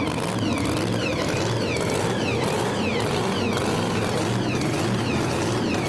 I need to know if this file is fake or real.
real